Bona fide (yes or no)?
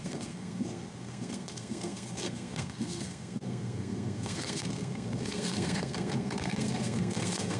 no